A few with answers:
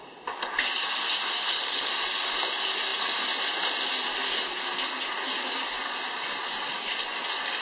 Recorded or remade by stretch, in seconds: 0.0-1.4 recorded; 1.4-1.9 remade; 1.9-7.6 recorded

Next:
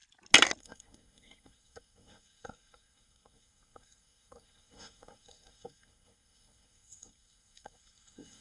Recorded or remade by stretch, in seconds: 0.0-0.6 recorded; 0.6-8.4 remade

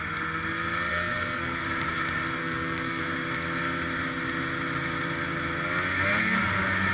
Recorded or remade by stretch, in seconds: 0.0-0.9 recorded; 0.9-1.6 remade; 1.6-2.4 recorded; 2.4-3.0 remade; 3.0-6.9 recorded